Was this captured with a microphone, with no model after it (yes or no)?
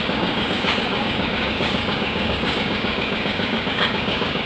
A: no